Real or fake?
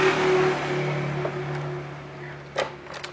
real